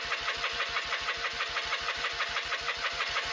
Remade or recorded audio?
recorded